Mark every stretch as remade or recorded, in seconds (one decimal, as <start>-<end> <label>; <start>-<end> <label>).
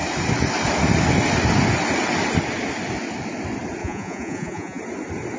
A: 0.0-3.8 recorded; 3.8-4.8 remade; 4.8-5.4 recorded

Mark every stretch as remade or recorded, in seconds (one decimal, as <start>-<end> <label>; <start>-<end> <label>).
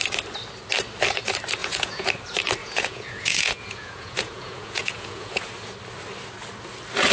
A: 0.0-1.6 recorded; 1.6-2.1 remade; 2.1-2.6 recorded; 2.6-5.5 remade; 5.5-7.1 recorded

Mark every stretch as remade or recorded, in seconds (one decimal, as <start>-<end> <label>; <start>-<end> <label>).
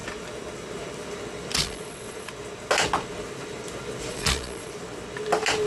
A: 0.0-1.6 recorded; 1.6-2.3 remade; 2.3-4.1 recorded; 4.1-4.7 remade; 4.7-5.7 recorded